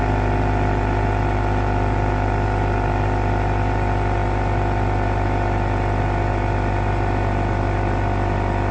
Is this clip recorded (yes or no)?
yes